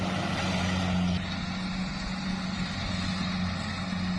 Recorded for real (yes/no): yes